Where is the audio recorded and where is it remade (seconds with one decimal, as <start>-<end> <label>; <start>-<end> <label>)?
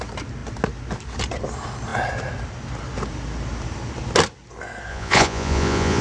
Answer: 0.0-4.9 recorded; 4.9-6.0 remade